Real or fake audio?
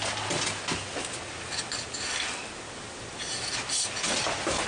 real